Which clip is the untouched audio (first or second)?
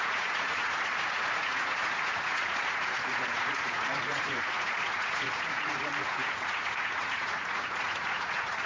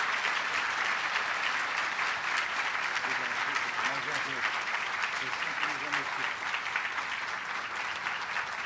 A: second